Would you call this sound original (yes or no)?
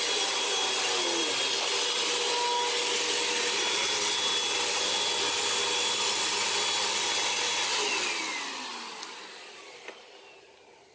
yes